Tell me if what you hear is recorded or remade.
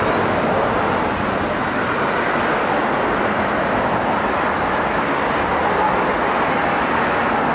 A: recorded